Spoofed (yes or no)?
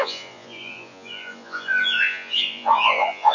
yes